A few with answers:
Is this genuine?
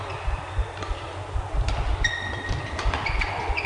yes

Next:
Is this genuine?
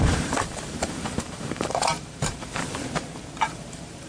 no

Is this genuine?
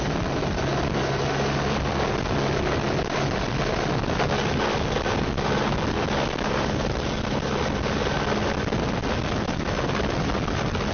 yes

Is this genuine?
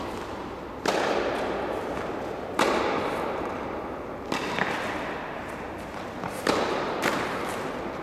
yes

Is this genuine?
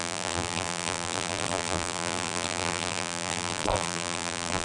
no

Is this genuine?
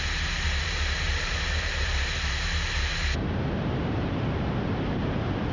no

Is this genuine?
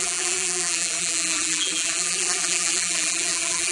no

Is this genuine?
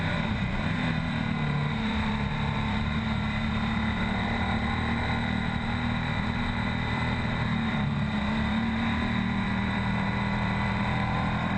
no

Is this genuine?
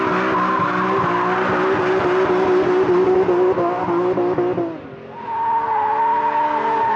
yes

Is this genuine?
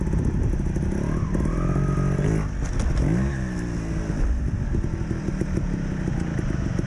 yes